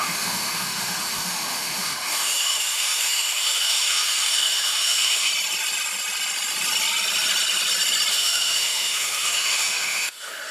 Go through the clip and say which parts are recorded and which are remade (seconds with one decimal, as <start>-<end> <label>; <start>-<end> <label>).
0.0-5.3 remade; 5.3-8.1 recorded; 8.1-10.5 remade

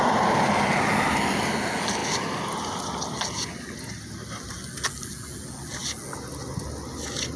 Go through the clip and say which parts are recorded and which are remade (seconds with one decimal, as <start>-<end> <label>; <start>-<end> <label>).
0.0-7.4 recorded

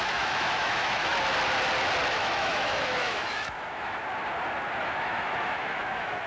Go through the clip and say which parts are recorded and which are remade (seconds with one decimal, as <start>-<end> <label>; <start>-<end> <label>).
0.0-1.1 remade; 1.1-2.1 recorded; 2.1-4.0 remade; 4.0-4.8 recorded; 4.8-6.3 remade

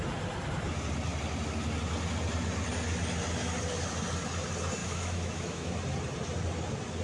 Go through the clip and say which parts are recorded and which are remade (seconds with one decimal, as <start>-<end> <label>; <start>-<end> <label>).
0.0-4.8 recorded; 4.8-5.7 remade; 5.7-7.0 recorded

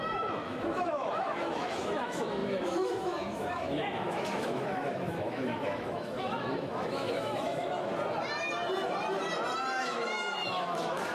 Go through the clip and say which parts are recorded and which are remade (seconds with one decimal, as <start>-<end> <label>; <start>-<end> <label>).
0.0-7.9 remade; 7.9-9.8 recorded; 9.8-11.1 remade

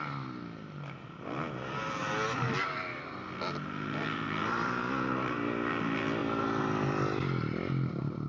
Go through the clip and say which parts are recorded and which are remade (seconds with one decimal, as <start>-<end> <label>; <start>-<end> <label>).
0.0-8.3 recorded